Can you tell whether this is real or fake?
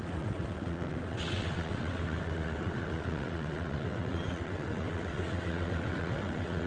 fake